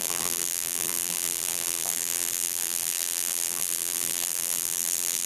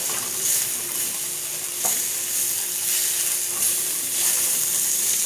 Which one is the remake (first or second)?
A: first